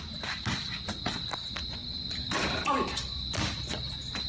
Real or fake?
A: real